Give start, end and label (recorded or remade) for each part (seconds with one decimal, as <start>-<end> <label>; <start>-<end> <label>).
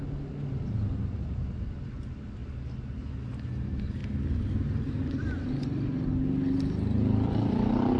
0.0-8.0 recorded